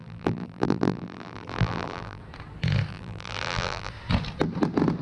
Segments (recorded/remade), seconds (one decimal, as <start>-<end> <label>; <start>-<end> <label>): 0.0-2.2 remade; 2.2-2.9 recorded; 2.9-3.9 remade; 3.9-5.0 recorded

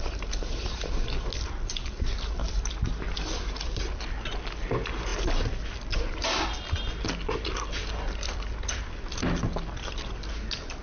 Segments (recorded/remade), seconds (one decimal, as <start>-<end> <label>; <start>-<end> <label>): 0.0-10.8 recorded

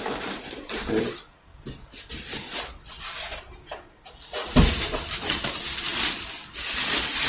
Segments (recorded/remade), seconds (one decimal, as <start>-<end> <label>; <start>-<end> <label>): 0.0-4.4 recorded; 4.4-5.4 remade; 5.4-7.3 recorded

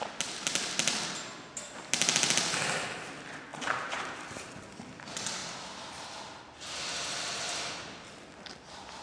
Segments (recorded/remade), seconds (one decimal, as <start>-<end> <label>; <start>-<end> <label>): 0.0-3.5 recorded; 3.5-4.5 remade; 4.5-9.0 recorded

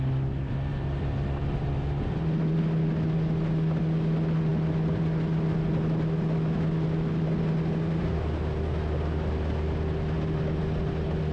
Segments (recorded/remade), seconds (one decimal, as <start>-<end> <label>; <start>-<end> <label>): 0.0-0.7 recorded; 0.7-2.6 remade; 2.6-11.3 recorded

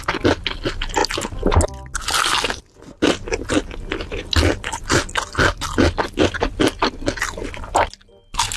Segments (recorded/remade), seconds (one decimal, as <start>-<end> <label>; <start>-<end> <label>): 0.0-8.6 recorded

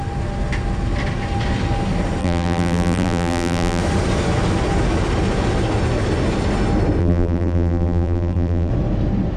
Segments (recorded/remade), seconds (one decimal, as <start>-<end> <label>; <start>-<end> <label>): 0.0-2.2 recorded; 2.2-3.8 remade; 3.8-7.0 recorded; 7.0-8.7 remade; 8.7-9.4 recorded

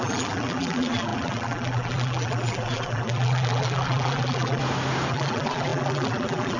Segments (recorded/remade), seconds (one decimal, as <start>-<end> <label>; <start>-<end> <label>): 0.0-4.6 remade; 4.6-5.1 recorded; 5.1-6.6 remade